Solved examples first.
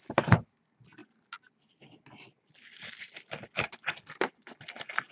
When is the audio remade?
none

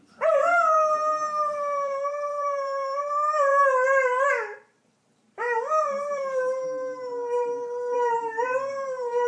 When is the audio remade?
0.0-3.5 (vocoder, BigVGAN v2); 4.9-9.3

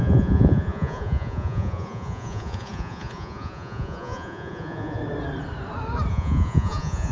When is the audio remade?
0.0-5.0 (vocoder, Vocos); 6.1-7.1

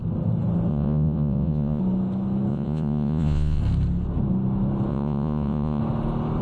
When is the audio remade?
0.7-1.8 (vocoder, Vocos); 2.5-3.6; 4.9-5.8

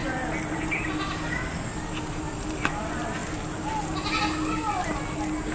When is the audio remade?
none